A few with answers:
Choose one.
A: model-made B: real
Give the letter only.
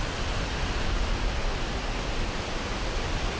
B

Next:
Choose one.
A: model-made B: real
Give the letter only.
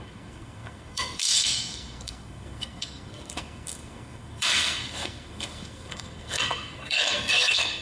A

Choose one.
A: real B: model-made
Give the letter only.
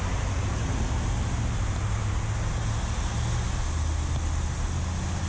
A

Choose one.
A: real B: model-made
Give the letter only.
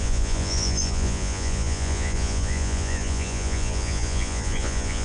B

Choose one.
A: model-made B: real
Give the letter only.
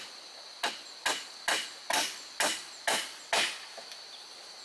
B